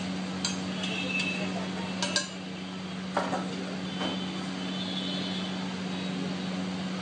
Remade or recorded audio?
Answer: recorded